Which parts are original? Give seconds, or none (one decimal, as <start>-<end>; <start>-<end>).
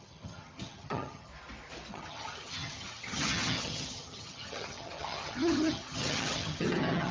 1.3-1.9